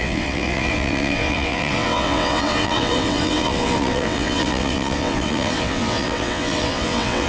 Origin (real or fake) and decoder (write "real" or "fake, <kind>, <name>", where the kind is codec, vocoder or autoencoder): fake, vocoder, WaveNeXt